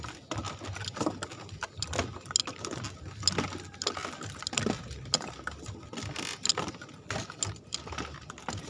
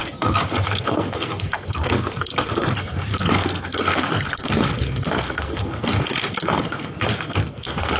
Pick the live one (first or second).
first